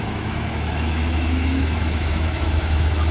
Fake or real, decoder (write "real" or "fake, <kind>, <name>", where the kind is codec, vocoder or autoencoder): fake, autoencoder, DAC-VAE